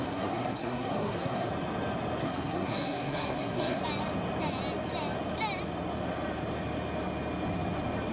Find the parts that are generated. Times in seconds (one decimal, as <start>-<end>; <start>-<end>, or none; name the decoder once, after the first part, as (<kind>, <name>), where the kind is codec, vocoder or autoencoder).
0.0-1.5 (codec, SNAC); 2.2-3.8